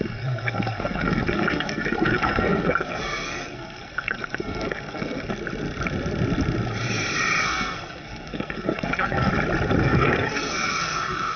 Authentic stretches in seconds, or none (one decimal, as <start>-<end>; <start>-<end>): 5.3-7.4; 9.3-9.8